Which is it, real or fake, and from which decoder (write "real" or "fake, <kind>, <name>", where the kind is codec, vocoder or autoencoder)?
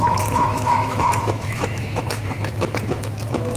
fake, autoencoder, DAC-VAE